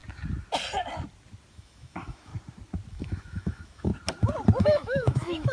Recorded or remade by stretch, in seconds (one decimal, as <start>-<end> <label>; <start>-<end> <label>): 0.0-1.5 recorded; 1.5-2.3 remade; 2.3-2.9 recorded; 2.9-3.9 remade; 3.9-4.6 recorded; 4.6-5.5 remade